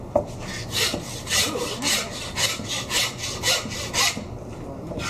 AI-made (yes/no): no